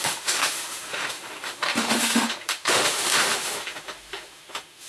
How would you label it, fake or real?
fake